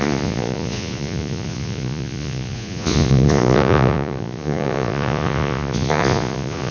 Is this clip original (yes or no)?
no